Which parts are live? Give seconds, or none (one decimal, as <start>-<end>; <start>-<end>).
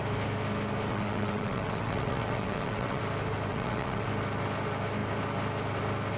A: 0.0-0.9; 3.0-3.5; 4.1-6.2